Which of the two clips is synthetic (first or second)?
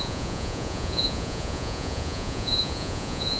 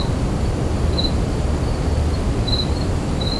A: first